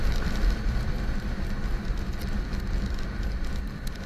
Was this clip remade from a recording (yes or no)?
no